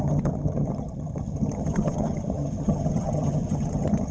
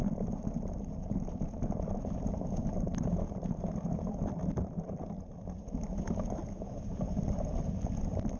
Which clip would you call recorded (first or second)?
second